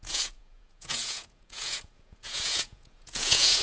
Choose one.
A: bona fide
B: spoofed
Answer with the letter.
B